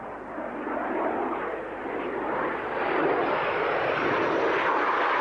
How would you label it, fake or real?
real